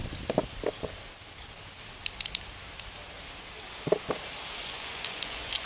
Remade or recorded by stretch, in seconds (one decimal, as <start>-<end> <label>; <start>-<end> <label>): 0.0-4.6 recorded; 4.6-5.7 remade